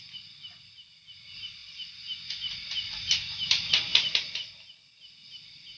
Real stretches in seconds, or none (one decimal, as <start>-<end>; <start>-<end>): 0.0-5.8